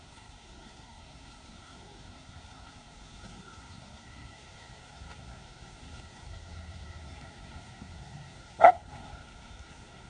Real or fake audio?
fake